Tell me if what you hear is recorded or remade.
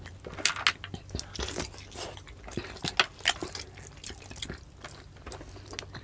recorded